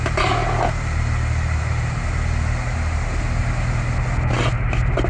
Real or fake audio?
real